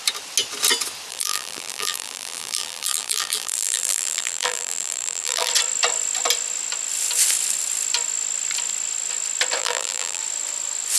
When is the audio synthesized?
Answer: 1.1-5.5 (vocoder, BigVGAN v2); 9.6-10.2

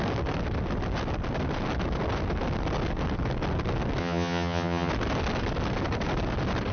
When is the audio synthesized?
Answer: 4.0-4.9 (vocoder, HiFi-GAN)

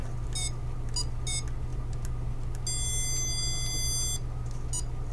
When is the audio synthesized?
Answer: none

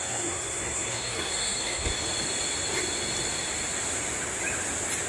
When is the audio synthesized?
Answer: 0.0-1.9 (codec, SNAC)

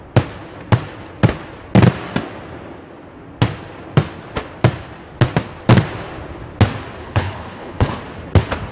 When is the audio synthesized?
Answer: 7.0-8.0 (codec, HILCodec)

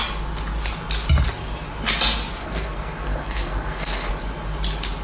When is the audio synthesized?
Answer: 2.4-4.1 (codec, SNAC)